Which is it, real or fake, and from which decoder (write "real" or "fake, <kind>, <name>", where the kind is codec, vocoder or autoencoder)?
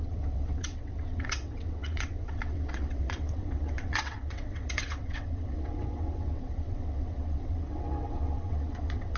fake, vocoder, WaveNeXt